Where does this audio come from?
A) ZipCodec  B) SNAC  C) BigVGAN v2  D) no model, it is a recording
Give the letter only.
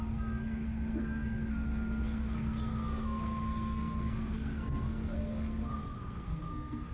B